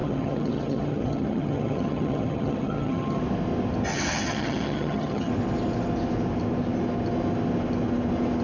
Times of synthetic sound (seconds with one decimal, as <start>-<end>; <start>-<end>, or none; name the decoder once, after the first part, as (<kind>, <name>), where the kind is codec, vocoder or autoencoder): 0.0-3.2 (vocoder, HiFi-GAN); 3.9-5.3